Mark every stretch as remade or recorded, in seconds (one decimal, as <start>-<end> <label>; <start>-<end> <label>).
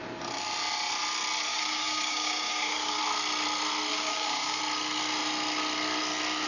0.0-1.5 recorded; 1.5-3.0 remade; 3.0-3.9 recorded; 3.9-4.6 remade; 4.6-6.5 recorded